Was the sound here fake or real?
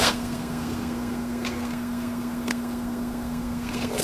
fake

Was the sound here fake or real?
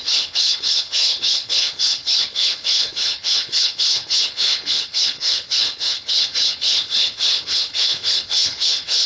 fake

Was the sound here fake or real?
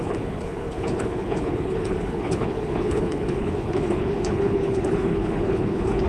fake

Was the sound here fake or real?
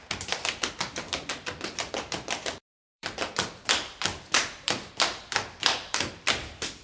fake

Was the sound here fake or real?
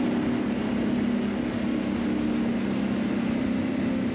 real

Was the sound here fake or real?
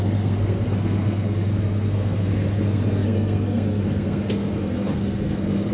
fake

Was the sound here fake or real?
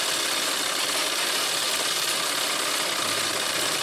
real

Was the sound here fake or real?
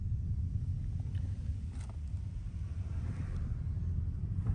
real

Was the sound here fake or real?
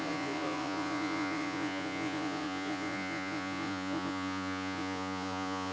fake